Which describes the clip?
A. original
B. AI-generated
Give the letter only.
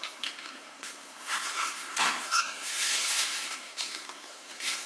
B